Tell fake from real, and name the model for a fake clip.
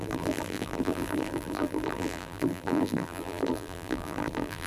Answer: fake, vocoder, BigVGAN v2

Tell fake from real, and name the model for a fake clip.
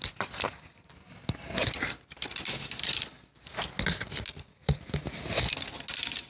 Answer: real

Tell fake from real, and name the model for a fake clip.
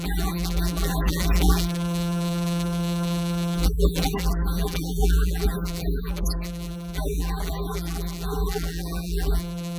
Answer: fake, vocoder, BigVGAN v2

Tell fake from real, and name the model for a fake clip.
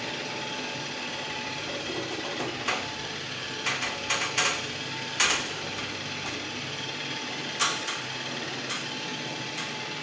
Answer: fake, vocoder, BigVGAN v2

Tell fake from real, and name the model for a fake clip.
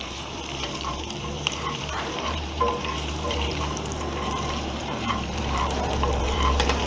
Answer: fake, vocoder, BigVGAN v2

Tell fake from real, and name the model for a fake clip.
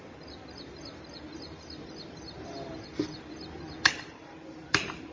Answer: fake, vocoder, BigVGAN v2